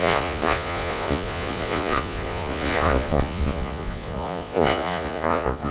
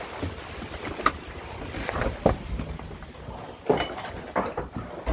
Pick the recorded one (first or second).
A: second